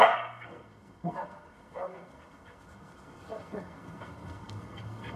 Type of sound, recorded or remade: remade